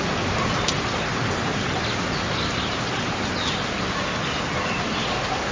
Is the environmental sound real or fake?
real